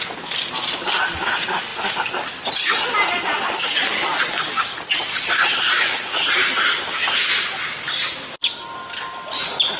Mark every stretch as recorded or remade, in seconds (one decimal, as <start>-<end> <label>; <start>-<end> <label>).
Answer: 0.0-9.8 recorded